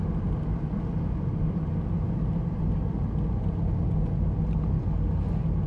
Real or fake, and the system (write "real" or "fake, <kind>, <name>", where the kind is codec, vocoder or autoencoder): real